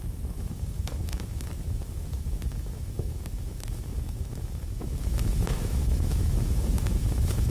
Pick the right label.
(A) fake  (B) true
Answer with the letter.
A